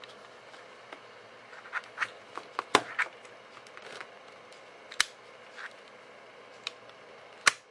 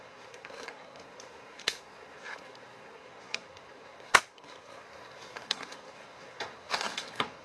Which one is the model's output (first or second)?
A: second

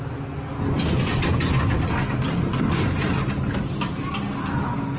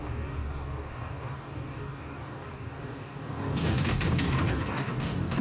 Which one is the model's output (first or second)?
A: second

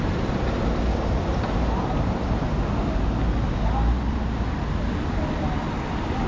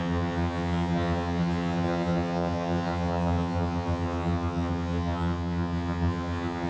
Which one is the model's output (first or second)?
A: second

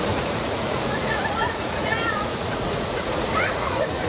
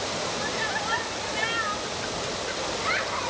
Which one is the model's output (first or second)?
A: first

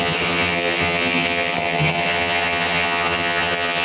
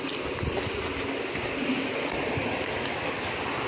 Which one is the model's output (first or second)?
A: first